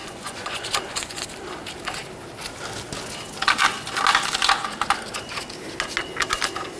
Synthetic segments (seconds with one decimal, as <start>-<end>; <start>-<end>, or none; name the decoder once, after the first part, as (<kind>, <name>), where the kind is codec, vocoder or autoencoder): 0.0-1.2 (vocoder, Vocos)